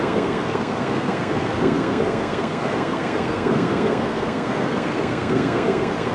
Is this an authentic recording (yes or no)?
no